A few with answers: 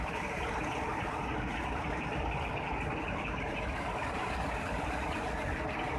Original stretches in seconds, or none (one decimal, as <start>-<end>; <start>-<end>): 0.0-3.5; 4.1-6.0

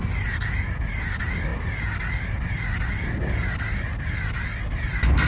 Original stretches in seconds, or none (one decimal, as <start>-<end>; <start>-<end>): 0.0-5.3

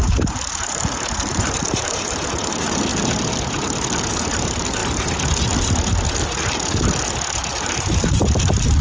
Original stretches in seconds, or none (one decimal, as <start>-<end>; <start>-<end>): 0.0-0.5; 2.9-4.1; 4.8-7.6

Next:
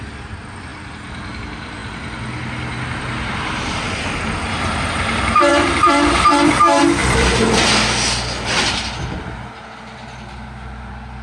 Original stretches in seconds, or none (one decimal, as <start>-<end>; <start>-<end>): 0.0-5.5; 6.5-7.0; 7.7-11.2

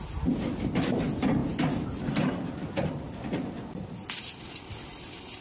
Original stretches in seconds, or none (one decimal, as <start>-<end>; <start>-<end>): 0.0-5.4

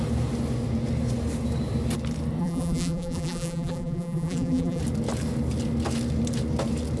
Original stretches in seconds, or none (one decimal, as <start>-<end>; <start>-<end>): 0.0-2.4; 4.8-7.0